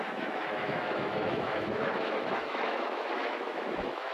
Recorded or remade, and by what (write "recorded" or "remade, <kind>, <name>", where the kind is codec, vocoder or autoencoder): remade, autoencoder, DAC-VAE